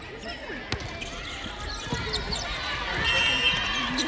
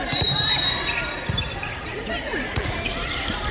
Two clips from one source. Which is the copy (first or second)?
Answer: second